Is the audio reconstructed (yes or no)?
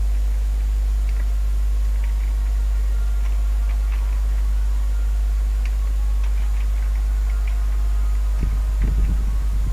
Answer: no